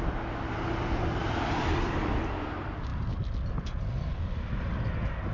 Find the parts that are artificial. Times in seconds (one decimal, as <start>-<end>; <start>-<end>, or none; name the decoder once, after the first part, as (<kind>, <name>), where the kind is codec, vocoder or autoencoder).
none